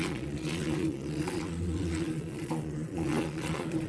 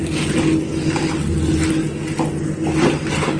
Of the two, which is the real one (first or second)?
second